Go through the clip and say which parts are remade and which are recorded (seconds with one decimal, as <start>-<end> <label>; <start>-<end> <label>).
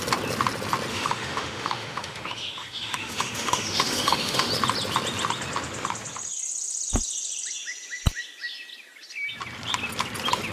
0.0-0.9 recorded; 0.9-4.5 remade; 4.5-10.5 recorded